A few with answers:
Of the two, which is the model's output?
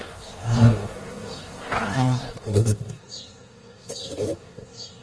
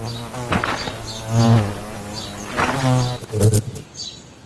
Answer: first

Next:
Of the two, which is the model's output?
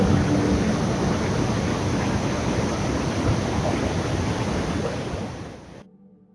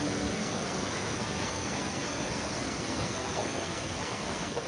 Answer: second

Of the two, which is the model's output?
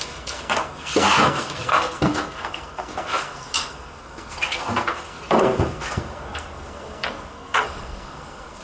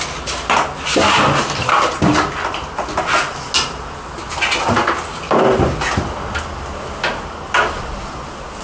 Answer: first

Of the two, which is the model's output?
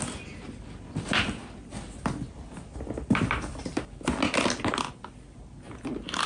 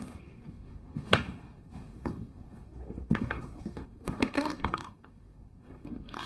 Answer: second